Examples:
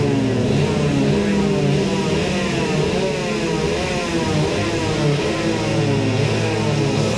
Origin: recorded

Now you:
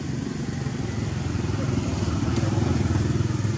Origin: recorded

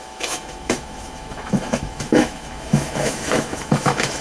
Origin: remade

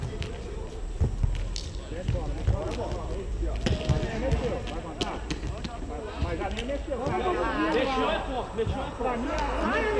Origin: recorded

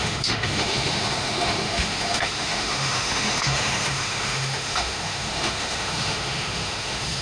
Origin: remade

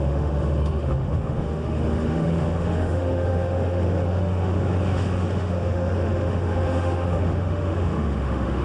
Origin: remade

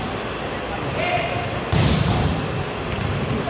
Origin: recorded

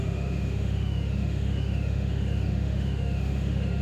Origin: remade